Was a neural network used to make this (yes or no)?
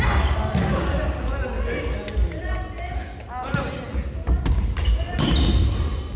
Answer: no